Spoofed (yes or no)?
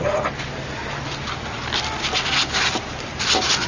no